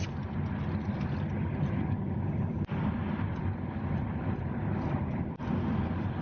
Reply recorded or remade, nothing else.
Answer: recorded